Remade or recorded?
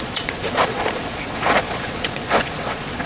remade